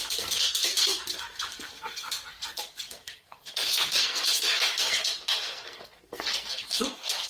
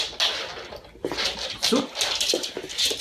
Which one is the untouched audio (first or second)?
second